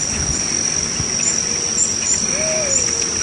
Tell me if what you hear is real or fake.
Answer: real